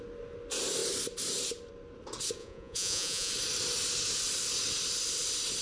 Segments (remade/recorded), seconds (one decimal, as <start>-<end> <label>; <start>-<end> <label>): 0.0-2.4 recorded; 2.4-3.3 remade; 3.3-5.6 recorded

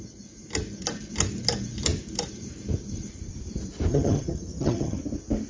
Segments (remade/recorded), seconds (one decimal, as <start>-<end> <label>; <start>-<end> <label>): 0.0-3.9 recorded; 3.9-5.0 remade; 5.0-5.5 recorded

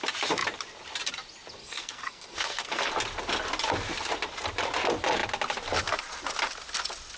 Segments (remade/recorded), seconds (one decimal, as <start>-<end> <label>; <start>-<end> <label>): 0.0-1.6 recorded; 1.6-2.9 remade; 2.9-7.2 recorded

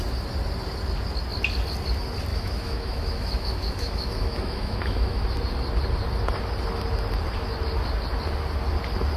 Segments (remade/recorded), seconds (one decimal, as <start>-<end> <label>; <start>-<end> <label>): 0.0-2.3 recorded; 2.3-5.2 remade; 5.2-9.2 recorded

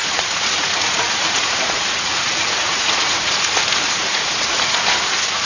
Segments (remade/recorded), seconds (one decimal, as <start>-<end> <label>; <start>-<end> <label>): 0.0-5.5 remade

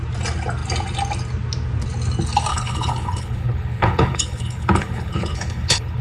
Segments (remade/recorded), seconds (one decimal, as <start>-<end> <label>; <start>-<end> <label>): 0.0-2.5 recorded; 2.5-6.0 remade